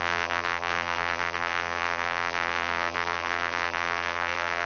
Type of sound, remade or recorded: remade